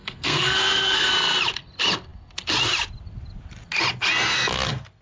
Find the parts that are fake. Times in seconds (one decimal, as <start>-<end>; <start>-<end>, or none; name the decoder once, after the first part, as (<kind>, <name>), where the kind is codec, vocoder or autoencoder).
0.0-1.1 (codec, SNAC)